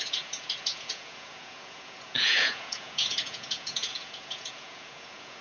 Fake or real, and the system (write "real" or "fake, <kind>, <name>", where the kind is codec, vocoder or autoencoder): fake, vocoder, Vocos